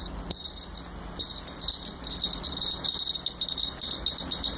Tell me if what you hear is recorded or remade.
recorded